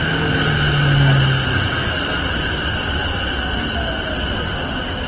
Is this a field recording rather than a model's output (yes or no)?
yes